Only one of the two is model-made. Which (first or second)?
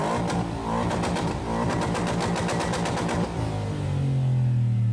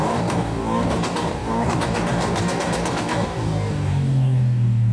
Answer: second